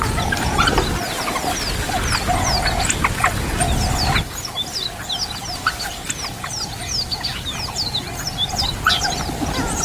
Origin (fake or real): real